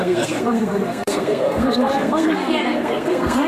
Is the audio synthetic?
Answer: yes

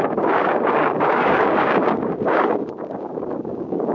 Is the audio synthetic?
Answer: yes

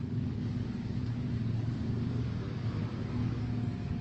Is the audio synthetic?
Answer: yes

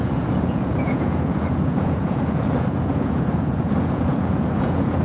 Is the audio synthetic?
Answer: yes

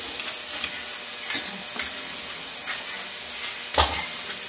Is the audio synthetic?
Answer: no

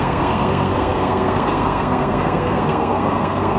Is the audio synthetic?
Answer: yes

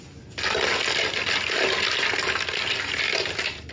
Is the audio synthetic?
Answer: no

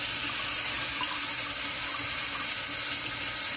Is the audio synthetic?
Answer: no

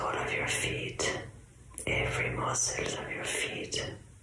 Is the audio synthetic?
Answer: no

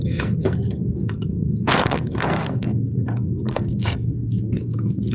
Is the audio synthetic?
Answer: yes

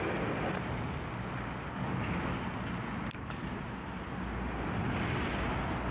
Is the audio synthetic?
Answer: no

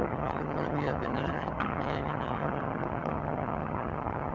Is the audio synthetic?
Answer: yes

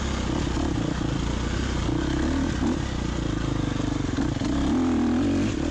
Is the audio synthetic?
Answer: no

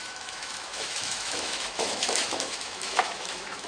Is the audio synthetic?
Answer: yes